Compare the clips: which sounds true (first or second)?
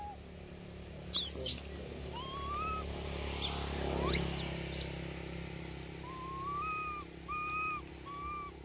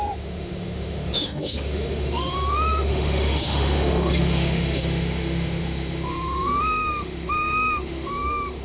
first